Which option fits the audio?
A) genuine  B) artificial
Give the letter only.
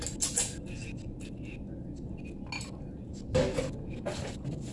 A